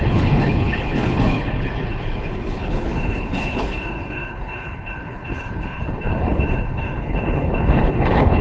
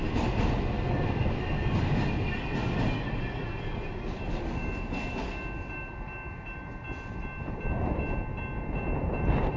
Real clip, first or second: second